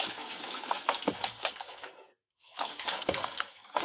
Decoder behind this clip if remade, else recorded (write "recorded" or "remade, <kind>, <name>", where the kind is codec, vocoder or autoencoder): remade, codec, SNAC